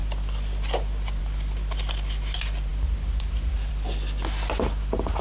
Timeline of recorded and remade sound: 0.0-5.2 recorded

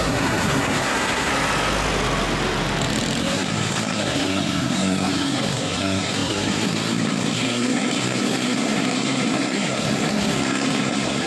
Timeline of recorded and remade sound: 0.0-1.3 remade; 1.3-3.2 recorded; 3.2-11.3 remade